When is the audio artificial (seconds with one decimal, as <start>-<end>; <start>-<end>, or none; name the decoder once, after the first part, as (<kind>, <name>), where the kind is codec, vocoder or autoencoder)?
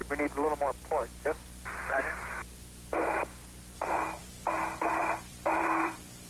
3.8-4.2 (vocoder, BigVGAN v2); 4.9-6.3